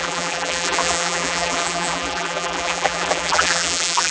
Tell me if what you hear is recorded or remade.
remade